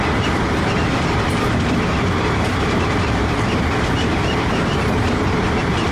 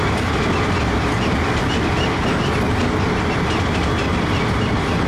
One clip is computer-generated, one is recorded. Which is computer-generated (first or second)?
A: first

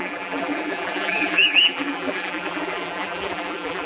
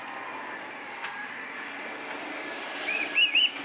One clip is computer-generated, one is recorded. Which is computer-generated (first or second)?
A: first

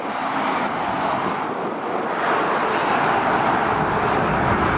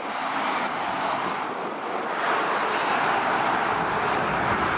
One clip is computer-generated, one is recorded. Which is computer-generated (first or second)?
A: second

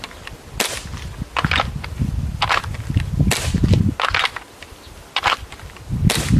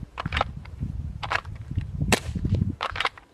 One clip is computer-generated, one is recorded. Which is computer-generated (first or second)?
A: second